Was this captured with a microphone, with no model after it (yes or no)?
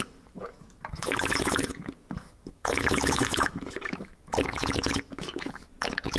no